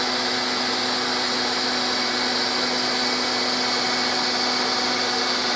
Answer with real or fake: real